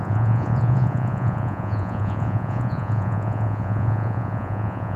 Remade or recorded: remade